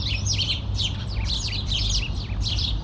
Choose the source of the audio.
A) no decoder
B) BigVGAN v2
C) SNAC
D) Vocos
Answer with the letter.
B